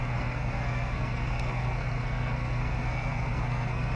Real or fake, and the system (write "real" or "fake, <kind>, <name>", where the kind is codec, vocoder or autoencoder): fake, codec, SNAC